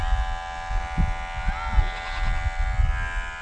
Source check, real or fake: real